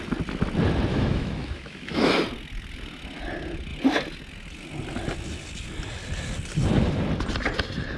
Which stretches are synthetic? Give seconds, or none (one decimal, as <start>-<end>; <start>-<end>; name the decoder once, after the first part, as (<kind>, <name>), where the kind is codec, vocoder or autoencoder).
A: 0.9-2.1 (autoencoder, DAC-VAE)